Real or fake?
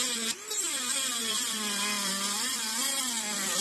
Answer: fake